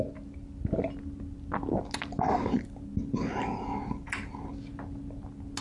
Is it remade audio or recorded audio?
recorded